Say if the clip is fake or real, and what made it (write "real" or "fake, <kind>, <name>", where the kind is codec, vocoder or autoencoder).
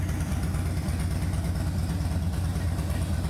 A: real